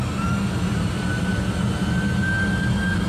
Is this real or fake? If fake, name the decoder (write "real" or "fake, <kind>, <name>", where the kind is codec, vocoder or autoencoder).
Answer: real